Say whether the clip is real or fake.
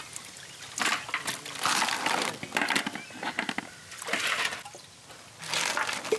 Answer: real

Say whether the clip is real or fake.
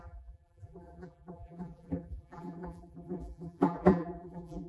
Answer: fake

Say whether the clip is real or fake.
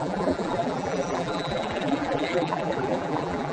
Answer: fake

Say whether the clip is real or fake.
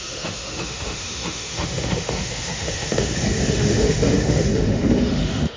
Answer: fake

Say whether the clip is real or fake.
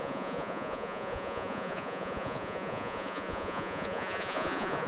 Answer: fake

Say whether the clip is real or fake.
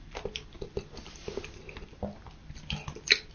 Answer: real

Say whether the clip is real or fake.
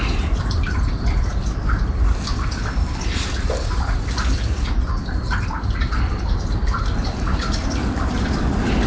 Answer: real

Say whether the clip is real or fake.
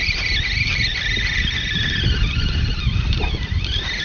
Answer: real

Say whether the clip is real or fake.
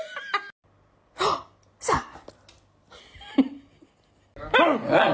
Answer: real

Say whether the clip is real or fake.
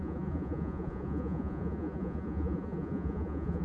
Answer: fake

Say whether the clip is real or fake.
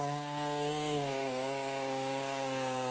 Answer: fake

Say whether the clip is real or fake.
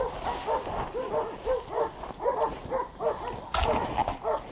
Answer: real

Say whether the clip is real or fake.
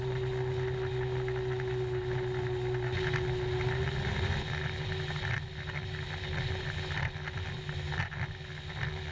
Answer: real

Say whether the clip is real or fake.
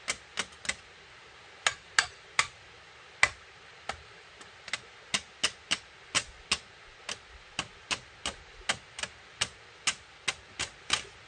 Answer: real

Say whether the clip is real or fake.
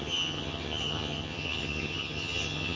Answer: fake